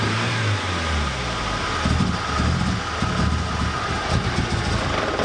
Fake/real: real